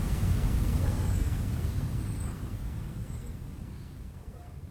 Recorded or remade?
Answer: remade